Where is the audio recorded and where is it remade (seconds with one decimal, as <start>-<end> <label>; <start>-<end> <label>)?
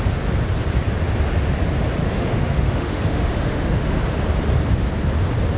0.0-2.0 recorded; 2.0-4.0 remade; 4.0-5.6 recorded